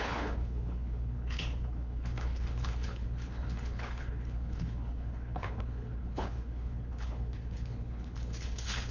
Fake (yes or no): yes